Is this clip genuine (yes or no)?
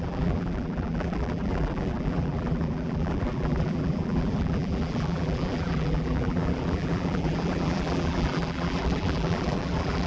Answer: no